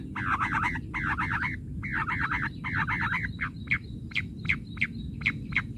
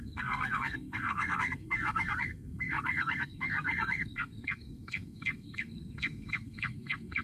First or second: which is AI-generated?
second